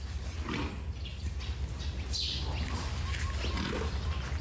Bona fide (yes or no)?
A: yes